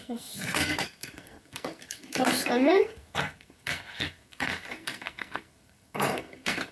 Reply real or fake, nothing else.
fake